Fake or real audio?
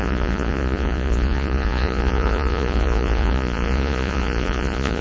fake